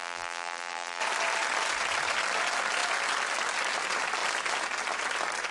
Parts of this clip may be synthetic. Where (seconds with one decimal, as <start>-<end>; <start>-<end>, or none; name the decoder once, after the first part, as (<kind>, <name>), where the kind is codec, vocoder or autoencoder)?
0.0-1.0 (vocoder, BigVGAN v2)